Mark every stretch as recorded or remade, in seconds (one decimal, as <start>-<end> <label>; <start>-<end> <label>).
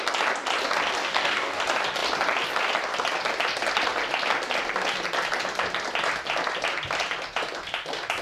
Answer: 0.0-1.0 recorded; 1.0-1.6 remade; 1.6-8.2 recorded